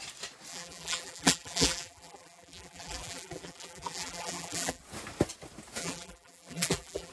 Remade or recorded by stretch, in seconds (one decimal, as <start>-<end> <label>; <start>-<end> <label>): 0.0-0.5 recorded; 0.5-4.8 remade; 4.8-5.8 recorded; 5.8-7.1 remade